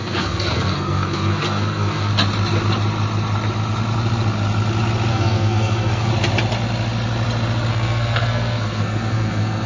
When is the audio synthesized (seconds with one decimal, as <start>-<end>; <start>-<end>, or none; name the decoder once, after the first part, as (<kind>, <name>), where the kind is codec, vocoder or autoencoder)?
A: 0.0-2.1 (codec, SNAC); 5.1-6.1; 7.7-9.7